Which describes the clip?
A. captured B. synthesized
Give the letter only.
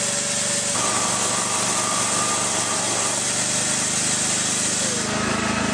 A